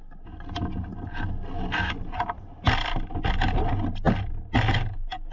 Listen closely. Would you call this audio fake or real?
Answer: real